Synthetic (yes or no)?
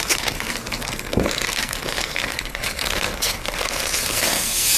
yes